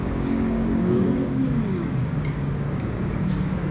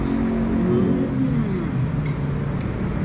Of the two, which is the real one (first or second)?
second